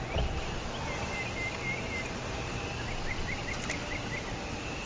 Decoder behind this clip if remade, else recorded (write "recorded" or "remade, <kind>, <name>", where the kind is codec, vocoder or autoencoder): recorded